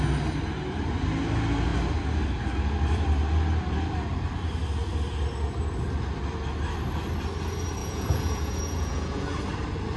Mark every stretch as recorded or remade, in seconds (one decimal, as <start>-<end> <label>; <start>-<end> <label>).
0.0-7.8 recorded; 7.8-9.4 remade; 9.4-10.0 recorded